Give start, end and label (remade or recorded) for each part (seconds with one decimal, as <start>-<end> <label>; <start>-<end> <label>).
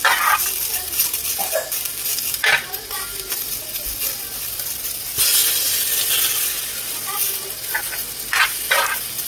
0.0-9.3 recorded